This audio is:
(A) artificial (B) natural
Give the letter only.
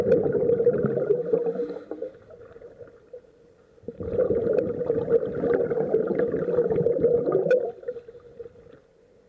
A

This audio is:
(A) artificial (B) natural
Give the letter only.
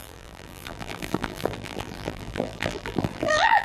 A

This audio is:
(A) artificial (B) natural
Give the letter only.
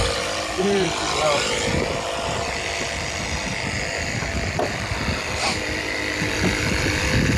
A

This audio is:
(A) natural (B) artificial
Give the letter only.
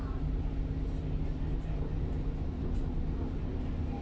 A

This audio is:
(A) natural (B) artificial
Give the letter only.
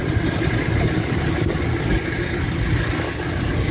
A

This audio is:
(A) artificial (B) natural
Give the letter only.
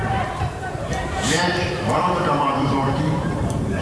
A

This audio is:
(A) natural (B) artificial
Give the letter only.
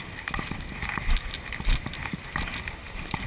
A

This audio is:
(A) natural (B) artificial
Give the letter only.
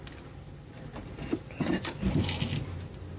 A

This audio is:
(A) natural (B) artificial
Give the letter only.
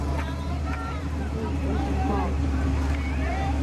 B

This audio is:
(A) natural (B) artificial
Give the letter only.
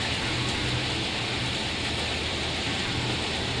A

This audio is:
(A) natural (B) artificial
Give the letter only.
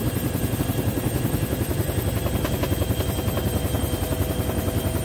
A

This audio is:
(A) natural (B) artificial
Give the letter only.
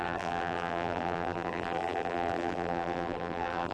B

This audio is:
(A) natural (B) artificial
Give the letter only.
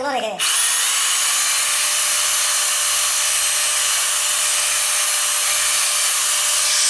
A